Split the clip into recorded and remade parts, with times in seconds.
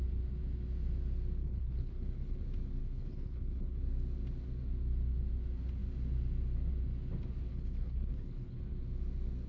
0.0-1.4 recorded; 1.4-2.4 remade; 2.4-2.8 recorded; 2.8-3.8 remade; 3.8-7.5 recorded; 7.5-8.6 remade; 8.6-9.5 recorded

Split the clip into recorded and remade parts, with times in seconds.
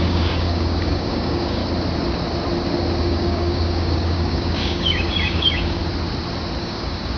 0.0-1.6 remade; 1.6-3.0 recorded; 3.0-5.8 remade; 5.8-6.6 recorded; 6.6-7.2 remade